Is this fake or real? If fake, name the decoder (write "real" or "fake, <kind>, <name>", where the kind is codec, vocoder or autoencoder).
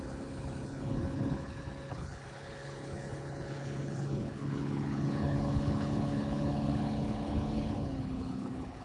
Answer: fake, codec, HILCodec